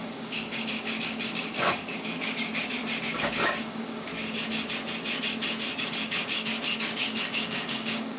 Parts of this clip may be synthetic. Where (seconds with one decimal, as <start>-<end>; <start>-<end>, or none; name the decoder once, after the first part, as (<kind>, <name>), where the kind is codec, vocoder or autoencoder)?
0.0-2.5 (codec, DAC); 3.2-4.1; 5.8-8.2